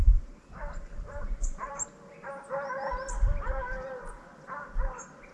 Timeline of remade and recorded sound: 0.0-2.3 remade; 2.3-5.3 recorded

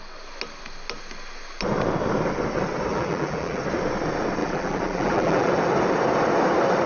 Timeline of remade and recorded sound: 0.0-2.9 recorded; 2.9-3.6 remade; 3.6-4.4 recorded; 4.4-5.5 remade; 5.5-6.9 recorded

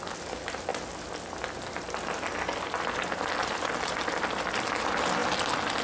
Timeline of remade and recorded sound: 0.0-5.8 recorded

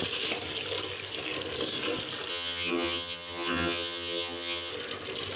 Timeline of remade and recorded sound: 0.0-2.3 recorded; 2.3-4.7 remade; 4.7-5.4 recorded

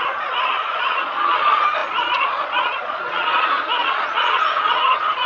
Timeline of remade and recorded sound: 0.0-5.3 remade